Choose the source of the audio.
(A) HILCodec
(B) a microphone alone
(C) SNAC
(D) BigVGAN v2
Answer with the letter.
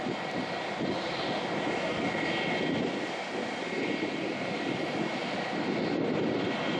B